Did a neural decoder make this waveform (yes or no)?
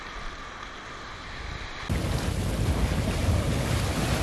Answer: no